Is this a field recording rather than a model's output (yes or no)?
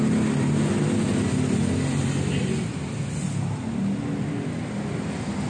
yes